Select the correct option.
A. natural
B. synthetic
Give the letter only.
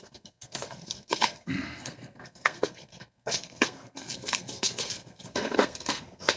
B